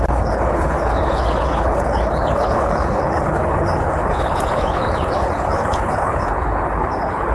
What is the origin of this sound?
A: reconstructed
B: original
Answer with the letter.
A